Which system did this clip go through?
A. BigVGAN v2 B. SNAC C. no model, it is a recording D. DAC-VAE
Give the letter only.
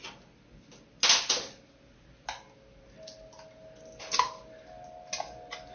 C